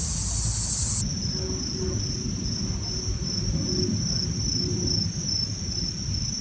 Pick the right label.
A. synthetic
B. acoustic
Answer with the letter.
B